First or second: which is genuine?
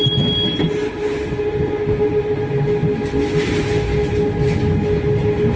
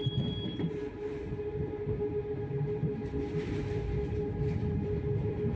first